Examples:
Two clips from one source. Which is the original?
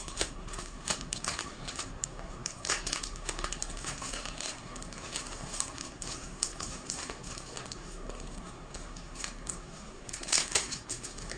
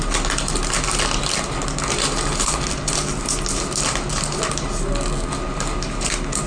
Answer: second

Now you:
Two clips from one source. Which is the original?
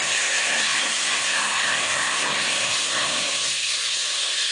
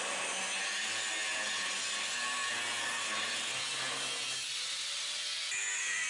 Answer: second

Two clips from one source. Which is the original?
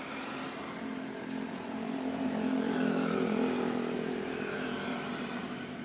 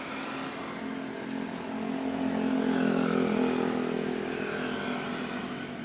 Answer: second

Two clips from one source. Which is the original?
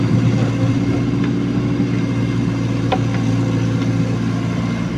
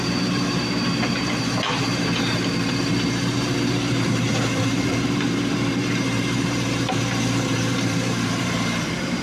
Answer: first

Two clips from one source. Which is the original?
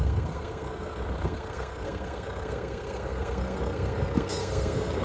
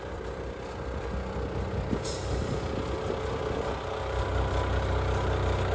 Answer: second